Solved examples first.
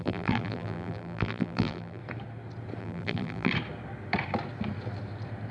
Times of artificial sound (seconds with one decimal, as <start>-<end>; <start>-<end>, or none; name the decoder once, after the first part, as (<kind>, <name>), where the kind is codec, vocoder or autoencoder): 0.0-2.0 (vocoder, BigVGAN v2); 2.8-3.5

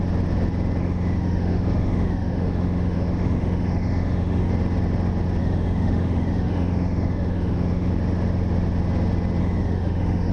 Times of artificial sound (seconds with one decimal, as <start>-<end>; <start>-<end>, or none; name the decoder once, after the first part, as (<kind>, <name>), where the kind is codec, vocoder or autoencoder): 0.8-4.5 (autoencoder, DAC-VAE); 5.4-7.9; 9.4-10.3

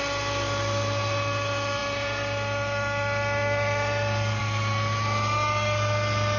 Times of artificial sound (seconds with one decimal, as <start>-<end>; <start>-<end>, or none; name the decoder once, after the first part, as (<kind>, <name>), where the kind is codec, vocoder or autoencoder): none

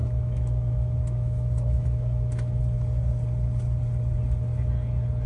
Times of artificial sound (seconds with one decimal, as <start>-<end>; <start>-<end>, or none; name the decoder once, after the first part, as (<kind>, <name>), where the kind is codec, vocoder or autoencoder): 0.0-2.6 (autoencoder, DAC-VAE)

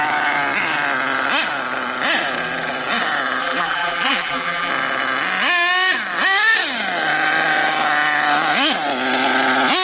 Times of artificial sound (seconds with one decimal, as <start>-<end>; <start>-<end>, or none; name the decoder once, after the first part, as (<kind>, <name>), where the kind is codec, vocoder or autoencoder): 3.4-4.7 (vocoder, BigVGAN v2)

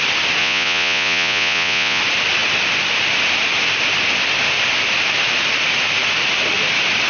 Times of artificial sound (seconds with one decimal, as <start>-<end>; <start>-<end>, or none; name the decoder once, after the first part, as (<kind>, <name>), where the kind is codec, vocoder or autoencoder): 0.4-2.0 (vocoder, Vocos)